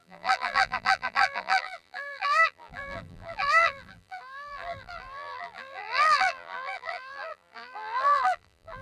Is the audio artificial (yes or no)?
yes